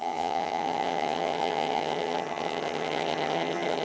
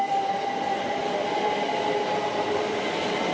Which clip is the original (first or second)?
second